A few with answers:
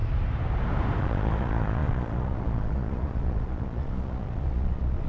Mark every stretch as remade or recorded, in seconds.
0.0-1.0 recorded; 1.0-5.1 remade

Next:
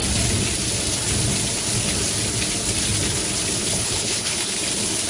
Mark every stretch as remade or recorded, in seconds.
0.0-3.6 recorded; 3.6-4.6 remade; 4.6-5.1 recorded

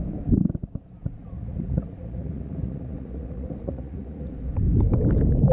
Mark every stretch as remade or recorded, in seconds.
0.0-1.0 recorded; 1.0-4.3 remade; 4.3-5.5 recorded

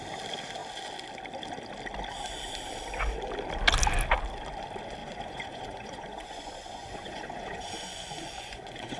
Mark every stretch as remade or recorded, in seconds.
0.0-5.0 recorded; 5.0-9.0 remade